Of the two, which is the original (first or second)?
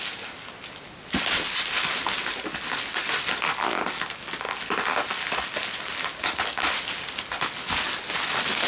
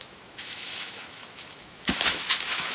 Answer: first